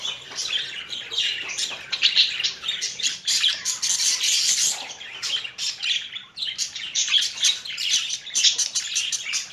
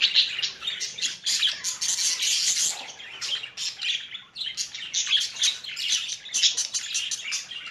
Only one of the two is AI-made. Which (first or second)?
first